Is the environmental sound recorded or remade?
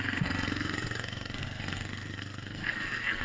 remade